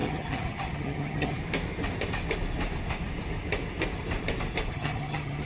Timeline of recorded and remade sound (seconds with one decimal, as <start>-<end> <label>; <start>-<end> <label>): 0.0-1.4 remade; 1.4-4.7 recorded; 4.7-5.5 remade